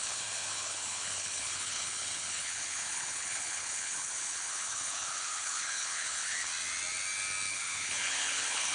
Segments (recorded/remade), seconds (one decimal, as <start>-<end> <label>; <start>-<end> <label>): 0.0-6.5 remade; 6.5-7.5 recorded; 7.5-8.7 remade